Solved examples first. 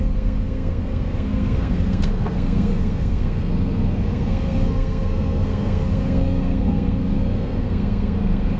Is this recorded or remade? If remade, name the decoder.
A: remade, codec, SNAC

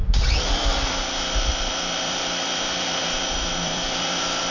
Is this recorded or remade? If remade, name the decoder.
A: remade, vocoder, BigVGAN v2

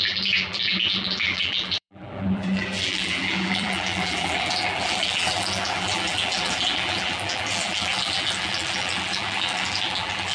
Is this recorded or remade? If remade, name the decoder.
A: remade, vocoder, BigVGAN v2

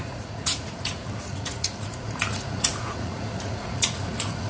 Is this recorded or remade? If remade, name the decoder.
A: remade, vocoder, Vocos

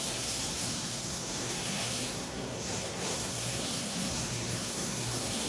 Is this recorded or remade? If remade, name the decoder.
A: remade, codec, SNAC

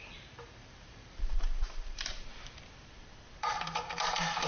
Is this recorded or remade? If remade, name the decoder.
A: remade, vocoder, BigVGAN v2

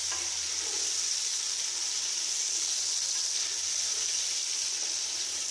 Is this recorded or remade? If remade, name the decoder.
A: recorded